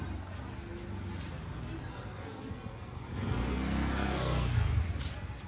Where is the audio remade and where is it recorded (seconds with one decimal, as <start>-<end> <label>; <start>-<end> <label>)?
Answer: 0.0-1.9 recorded; 1.9-4.8 remade; 4.8-5.5 recorded